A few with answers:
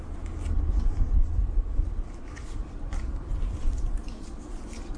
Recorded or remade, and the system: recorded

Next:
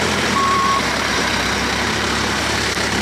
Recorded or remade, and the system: remade, vocoder, BigVGAN v2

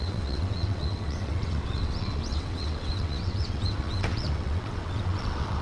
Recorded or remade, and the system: remade, vocoder, WaveNeXt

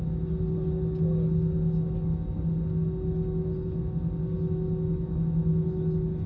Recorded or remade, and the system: recorded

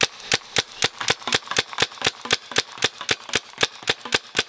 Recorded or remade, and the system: recorded